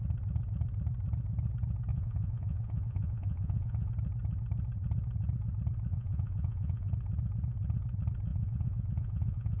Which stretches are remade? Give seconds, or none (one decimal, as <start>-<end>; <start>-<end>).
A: 1.9-3.9; 5.9-6.9; 8.3-9.6